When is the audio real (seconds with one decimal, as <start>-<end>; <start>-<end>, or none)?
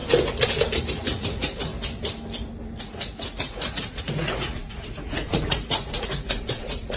0.0-0.8; 1.7-2.8